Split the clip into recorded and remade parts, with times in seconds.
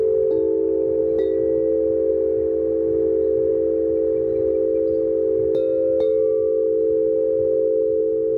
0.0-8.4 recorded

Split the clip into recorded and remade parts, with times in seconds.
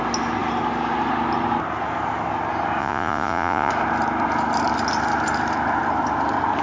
0.0-2.8 recorded; 2.8-3.7 remade; 3.7-6.6 recorded